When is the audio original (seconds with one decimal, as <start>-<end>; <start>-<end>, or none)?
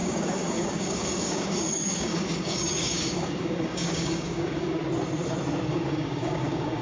4.8-5.7